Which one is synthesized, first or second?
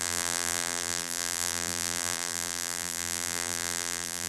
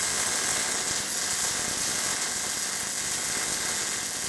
first